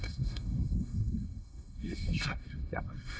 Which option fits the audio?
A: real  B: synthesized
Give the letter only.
B